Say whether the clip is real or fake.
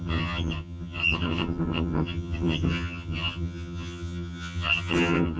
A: fake